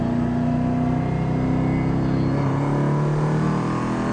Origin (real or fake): real